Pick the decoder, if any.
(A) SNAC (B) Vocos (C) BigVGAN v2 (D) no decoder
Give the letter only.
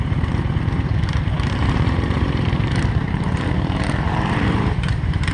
C